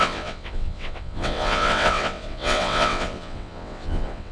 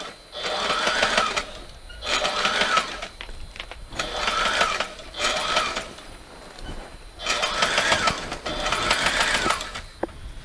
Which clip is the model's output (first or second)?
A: first